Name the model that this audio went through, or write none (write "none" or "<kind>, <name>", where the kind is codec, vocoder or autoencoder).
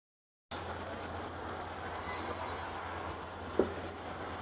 none